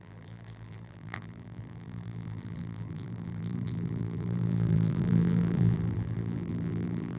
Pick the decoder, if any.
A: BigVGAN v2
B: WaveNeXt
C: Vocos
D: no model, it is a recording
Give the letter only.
A